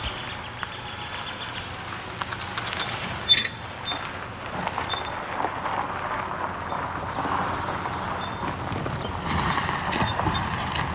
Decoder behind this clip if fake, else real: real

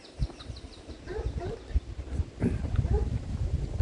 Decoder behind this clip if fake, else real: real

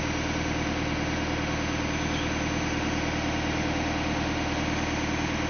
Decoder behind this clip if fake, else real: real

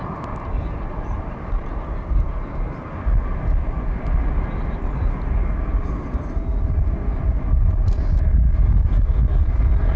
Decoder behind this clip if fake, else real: real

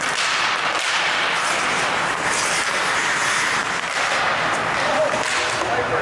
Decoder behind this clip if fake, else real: real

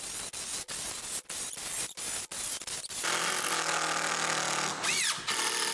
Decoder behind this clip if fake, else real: real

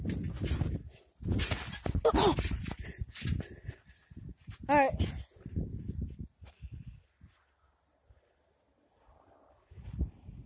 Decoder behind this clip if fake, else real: real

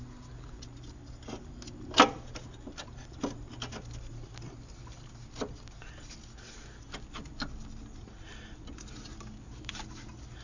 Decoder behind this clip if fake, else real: real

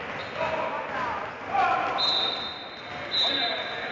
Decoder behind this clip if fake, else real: real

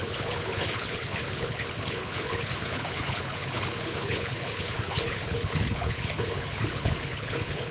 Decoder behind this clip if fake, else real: fake, codec, HILCodec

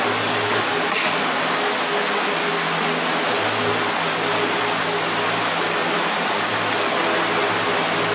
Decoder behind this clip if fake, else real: real